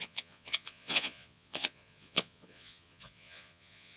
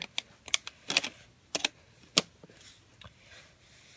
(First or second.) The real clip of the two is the second